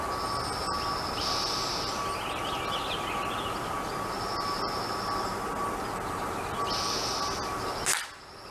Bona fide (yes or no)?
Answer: yes